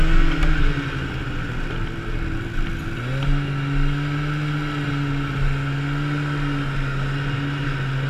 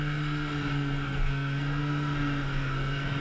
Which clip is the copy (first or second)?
second